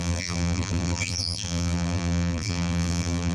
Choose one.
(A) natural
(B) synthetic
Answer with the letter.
B